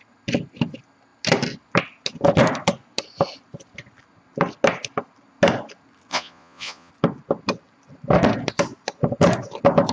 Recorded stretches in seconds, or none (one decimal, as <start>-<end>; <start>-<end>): 0.0-6.1; 6.9-9.9